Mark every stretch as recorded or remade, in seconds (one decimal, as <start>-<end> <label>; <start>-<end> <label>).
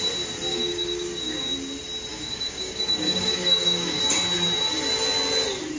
0.0-0.5 recorded; 0.5-1.5 remade; 1.5-2.1 recorded; 2.1-4.0 remade; 4.0-5.8 recorded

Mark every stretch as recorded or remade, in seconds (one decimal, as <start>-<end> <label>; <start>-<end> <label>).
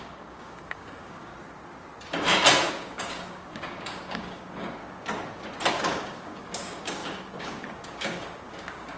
0.0-1.3 remade; 1.3-2.7 recorded; 2.7-4.8 remade; 4.8-5.7 recorded; 5.7-9.0 remade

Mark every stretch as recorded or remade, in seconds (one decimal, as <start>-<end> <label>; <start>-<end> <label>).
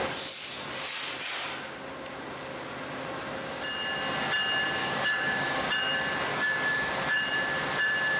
0.0-4.8 recorded; 4.8-5.7 remade; 5.7-6.3 recorded; 6.3-6.9 remade; 6.9-8.2 recorded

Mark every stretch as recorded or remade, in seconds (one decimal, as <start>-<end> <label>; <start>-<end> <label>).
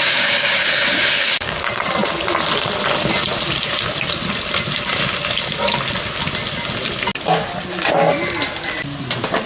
0.0-1.6 remade; 1.6-9.5 recorded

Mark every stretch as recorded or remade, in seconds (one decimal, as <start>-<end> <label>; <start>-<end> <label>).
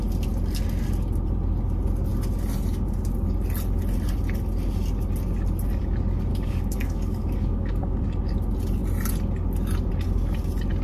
0.0-6.3 recorded; 6.3-8.0 remade; 8.0-10.8 recorded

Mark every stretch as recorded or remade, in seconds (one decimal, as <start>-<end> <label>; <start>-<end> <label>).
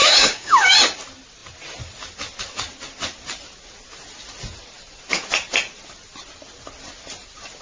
0.0-0.8 remade; 0.8-7.6 recorded